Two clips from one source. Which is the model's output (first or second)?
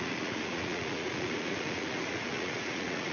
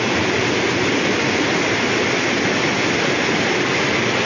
first